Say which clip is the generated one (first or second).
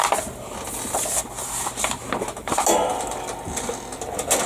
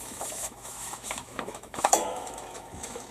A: second